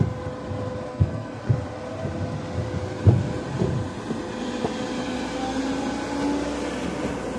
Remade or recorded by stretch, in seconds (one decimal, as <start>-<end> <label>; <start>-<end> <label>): 0.0-0.9 recorded; 0.9-1.4 remade; 1.4-7.4 recorded